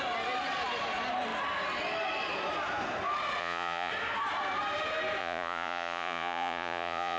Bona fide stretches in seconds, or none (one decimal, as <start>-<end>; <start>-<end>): 0.0-3.4; 3.9-5.2